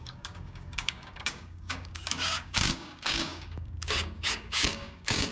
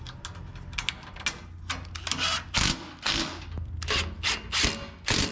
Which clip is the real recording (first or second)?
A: second